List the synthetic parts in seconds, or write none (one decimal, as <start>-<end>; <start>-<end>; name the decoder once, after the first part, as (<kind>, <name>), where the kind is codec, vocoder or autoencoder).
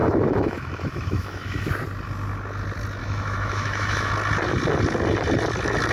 0.0-1.7 (autoencoder, DAC-VAE); 3.0-4.1